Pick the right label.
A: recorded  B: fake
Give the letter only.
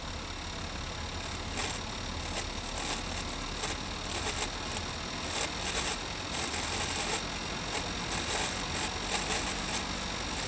A